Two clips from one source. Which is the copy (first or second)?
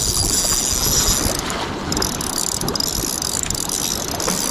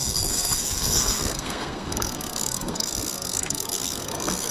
second